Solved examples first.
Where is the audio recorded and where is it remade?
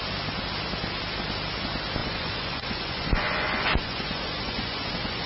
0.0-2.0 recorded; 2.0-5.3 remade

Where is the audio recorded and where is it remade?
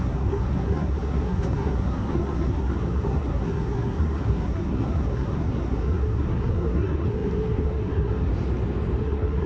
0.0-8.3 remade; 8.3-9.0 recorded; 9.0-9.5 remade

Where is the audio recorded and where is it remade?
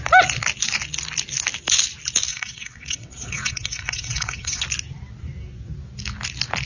0.0-2.3 recorded; 2.3-4.6 remade; 4.6-6.7 recorded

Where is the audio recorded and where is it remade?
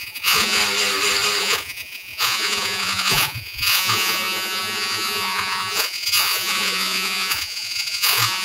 0.0-0.6 remade; 0.6-1.4 recorded; 1.4-8.4 remade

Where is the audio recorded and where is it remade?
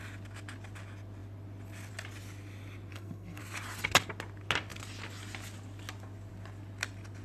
0.0-2.9 recorded; 2.9-3.4 remade; 3.4-7.2 recorded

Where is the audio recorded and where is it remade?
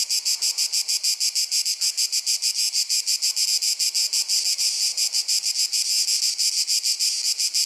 0.0-7.7 recorded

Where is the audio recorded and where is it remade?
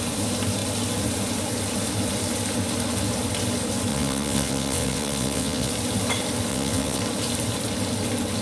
0.0-3.9 recorded; 3.9-5.7 remade; 5.7-6.5 recorded; 6.5-7.0 remade; 7.0-8.4 recorded